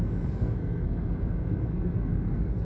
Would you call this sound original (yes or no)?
no